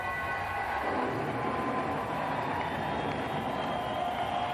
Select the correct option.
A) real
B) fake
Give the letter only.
A